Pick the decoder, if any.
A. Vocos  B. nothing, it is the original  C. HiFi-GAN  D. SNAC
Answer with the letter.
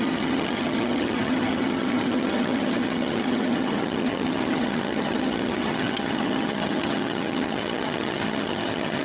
C